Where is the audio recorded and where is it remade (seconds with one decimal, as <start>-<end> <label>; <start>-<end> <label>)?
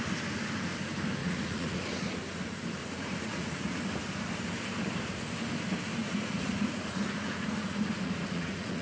0.0-1.2 recorded; 1.2-2.3 remade; 2.3-2.8 recorded; 2.8-3.8 remade; 3.8-6.0 recorded; 6.0-8.8 remade